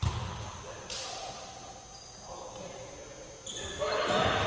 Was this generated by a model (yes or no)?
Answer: no